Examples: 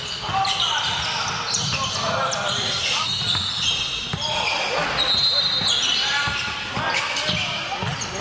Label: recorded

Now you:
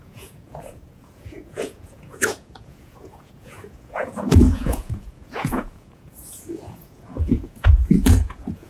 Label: remade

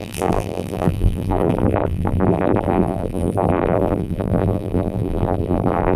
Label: remade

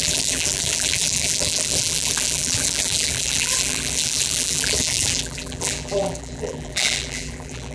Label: remade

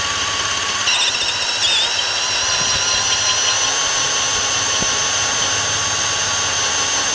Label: recorded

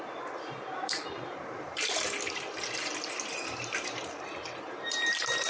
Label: remade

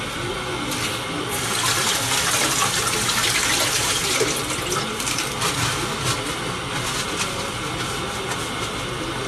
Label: recorded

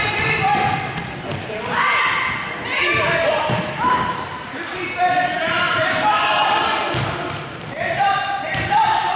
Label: remade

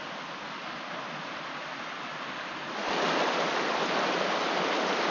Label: recorded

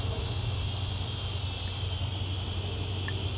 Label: recorded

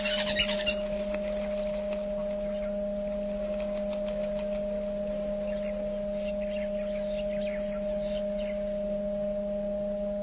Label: recorded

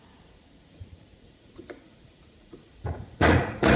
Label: remade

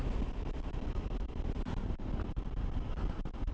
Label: recorded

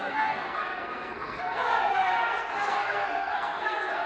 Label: remade